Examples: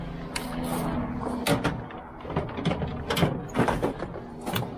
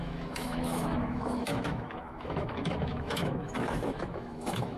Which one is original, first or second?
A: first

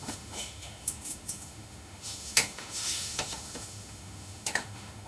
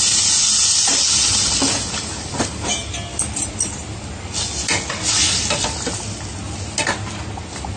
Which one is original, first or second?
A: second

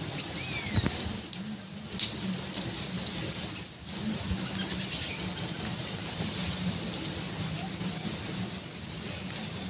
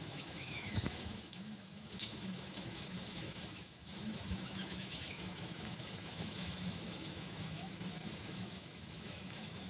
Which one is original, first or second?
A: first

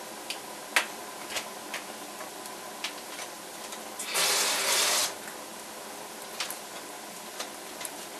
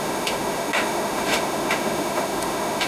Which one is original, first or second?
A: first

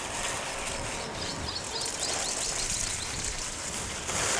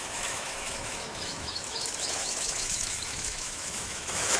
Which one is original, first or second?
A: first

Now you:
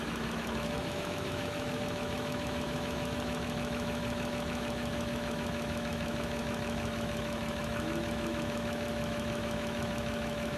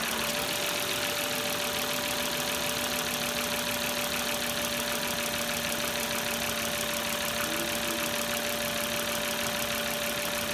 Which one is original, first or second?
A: second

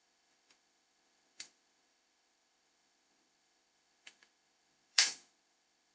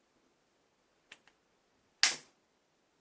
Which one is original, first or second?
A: second